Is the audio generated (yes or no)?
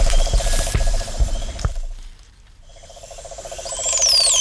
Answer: yes